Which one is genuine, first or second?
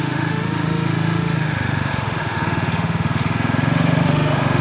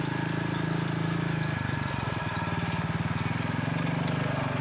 second